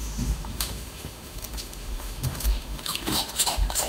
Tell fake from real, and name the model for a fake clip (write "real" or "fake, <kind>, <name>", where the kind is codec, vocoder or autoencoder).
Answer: fake, autoencoder, DAC-VAE